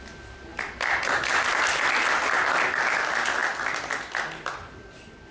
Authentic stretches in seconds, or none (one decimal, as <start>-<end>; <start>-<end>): 0.0-5.3

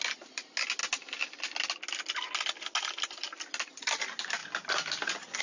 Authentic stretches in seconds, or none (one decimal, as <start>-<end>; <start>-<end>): 0.0-5.4

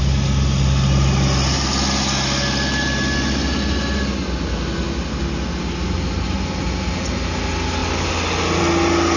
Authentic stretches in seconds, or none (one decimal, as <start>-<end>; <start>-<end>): 0.0-9.2

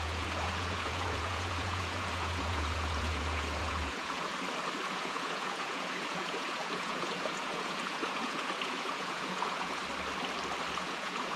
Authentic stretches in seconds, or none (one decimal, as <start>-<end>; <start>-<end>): 4.3-4.9; 9.8-10.8

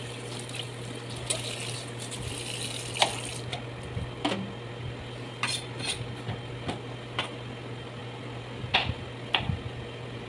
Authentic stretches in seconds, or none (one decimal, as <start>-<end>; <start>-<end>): 0.0-10.3